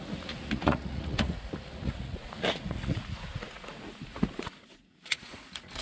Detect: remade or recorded remade